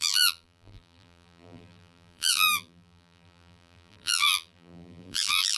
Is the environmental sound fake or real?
fake